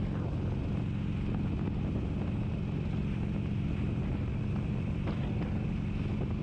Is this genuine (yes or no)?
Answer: yes